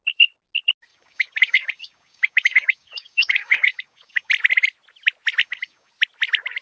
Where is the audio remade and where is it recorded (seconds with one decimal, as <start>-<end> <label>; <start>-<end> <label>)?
0.0-0.9 recorded; 0.9-4.3 remade; 4.3-5.4 recorded; 5.4-5.9 remade; 5.9-6.6 recorded